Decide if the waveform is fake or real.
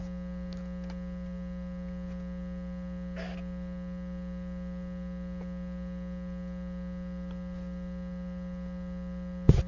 real